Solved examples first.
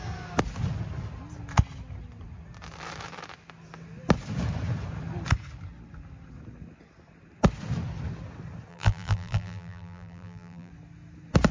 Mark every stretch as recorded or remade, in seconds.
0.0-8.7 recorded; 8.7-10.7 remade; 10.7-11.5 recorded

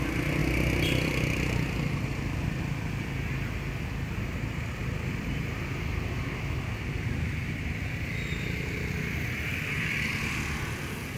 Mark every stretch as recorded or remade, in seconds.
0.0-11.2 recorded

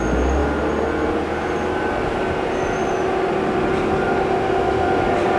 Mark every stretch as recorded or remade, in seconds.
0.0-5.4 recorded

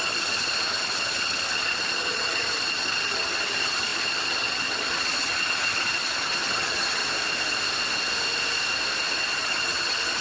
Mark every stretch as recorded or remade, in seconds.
0.0-7.0 remade; 7.0-9.4 recorded; 9.4-10.2 remade

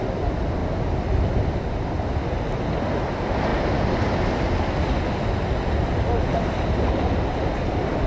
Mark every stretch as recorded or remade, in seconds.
0.0-6.3 recorded; 6.3-8.1 remade